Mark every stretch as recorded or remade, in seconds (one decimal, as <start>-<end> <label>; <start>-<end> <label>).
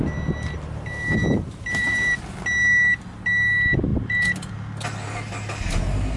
0.0-1.7 recorded; 1.7-2.4 remade; 2.4-3.9 recorded; 3.9-4.5 remade; 4.5-6.2 recorded